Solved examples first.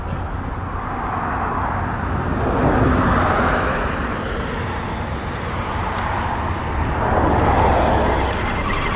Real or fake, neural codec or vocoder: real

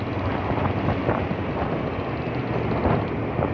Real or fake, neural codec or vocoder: real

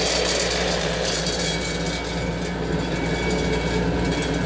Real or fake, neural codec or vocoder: real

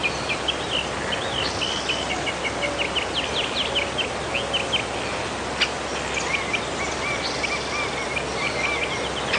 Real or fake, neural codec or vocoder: real